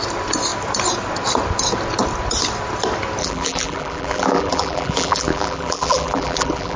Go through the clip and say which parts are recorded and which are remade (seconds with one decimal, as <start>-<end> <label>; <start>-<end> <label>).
0.0-3.2 recorded; 3.2-6.8 remade